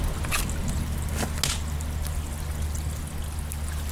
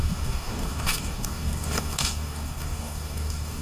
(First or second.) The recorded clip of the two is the first